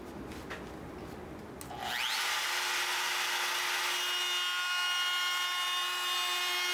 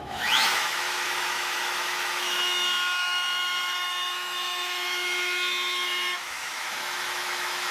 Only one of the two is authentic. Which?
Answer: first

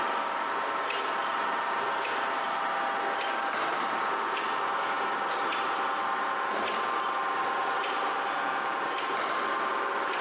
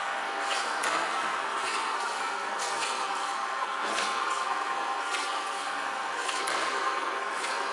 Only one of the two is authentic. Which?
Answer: first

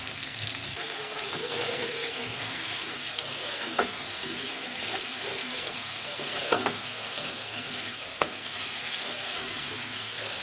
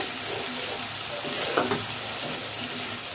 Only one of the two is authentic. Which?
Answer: second